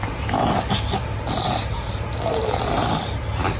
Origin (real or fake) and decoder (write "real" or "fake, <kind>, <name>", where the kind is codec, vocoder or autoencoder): real